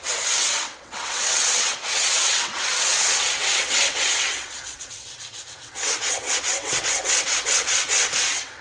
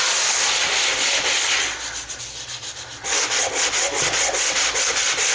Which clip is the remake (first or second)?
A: first